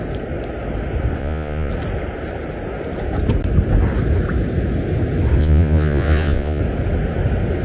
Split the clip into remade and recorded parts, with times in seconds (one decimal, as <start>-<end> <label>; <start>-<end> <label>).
0.0-1.2 recorded; 1.2-1.7 remade; 1.7-5.4 recorded; 5.4-6.6 remade; 6.6-7.6 recorded